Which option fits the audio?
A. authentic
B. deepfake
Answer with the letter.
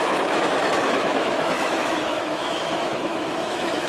B